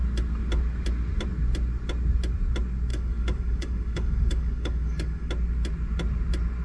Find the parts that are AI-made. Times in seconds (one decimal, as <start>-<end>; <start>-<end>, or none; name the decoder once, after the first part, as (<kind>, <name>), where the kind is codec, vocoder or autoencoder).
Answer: 2.9-5.3 (codec, DAC)

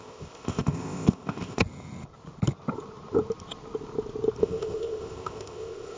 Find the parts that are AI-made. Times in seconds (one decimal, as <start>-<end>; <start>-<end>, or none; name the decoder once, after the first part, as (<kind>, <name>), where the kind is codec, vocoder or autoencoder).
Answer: 0.0-1.6 (codec, ZipCodec); 4.4-6.0

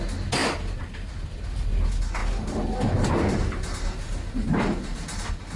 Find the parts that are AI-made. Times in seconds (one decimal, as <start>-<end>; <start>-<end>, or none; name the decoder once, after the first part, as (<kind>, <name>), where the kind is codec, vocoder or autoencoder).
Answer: 0.4-1.7 (vocoder, BigVGAN v2)

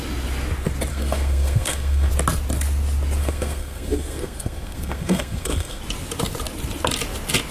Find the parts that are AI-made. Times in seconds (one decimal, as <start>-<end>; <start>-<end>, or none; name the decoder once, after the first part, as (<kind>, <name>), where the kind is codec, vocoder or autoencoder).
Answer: 0.9-2.1 (codec, SNAC); 3.2-5.8

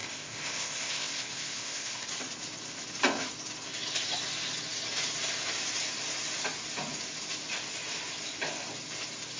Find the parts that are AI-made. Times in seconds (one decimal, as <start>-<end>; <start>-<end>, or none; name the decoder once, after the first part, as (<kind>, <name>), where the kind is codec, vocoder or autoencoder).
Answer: 0.0-2.1 (codec, ZipCodec)

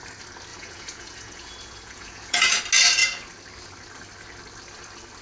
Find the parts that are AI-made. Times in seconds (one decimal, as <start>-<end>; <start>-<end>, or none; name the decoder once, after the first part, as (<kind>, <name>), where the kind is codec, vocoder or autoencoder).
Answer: 0.5-2.6 (vocoder, Vocos)